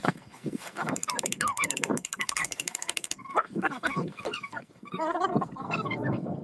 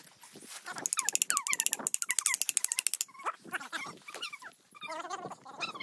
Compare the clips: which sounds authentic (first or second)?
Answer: second